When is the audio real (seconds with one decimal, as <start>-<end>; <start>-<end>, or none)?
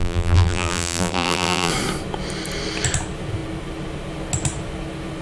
1.7-5.2